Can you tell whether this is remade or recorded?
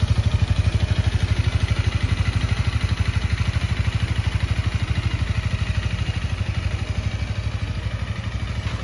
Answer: recorded